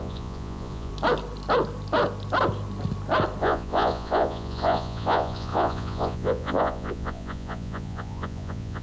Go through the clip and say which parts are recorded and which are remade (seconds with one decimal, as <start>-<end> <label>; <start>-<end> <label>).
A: 0.0-0.9 remade; 0.9-3.4 recorded; 3.4-8.8 remade